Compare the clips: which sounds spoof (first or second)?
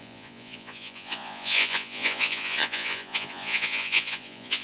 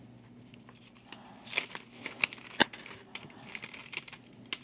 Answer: first